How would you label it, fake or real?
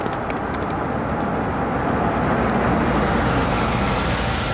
real